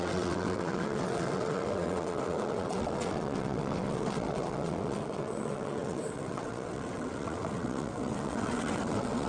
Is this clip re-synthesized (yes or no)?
yes